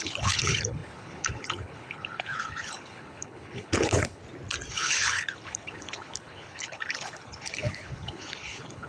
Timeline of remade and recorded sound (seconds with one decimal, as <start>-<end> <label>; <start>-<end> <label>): 0.0-4.2 remade; 4.2-4.7 recorded; 4.7-8.9 remade